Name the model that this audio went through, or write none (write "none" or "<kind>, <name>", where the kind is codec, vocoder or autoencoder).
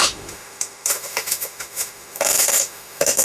autoencoder, DAC-VAE